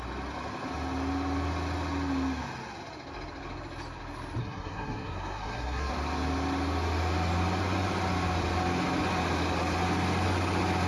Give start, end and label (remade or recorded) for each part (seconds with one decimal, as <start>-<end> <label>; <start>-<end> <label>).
0.0-4.4 recorded; 4.4-5.9 remade; 5.9-10.9 recorded